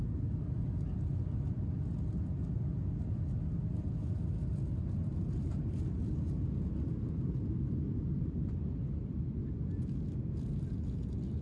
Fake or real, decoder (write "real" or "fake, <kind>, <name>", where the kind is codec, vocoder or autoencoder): real